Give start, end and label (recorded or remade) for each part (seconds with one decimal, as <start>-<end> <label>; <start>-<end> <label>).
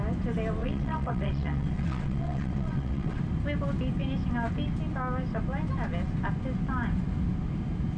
0.0-0.6 recorded; 0.6-3.2 remade; 3.2-8.0 recorded